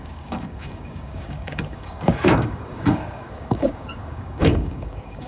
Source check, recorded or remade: remade